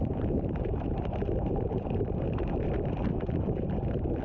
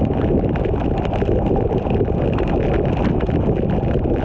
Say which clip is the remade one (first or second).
first